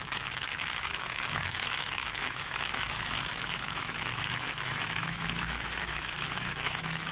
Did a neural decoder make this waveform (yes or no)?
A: yes